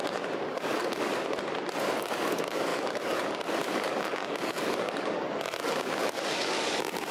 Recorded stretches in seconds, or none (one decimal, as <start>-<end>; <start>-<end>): 1.1-1.8